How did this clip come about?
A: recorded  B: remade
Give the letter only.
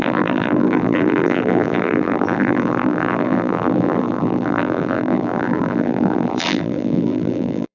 B